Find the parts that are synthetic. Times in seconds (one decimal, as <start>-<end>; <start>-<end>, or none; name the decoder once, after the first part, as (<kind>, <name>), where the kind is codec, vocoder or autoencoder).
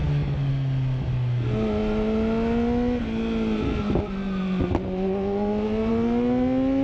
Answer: 0.0-0.5 (codec, DAC)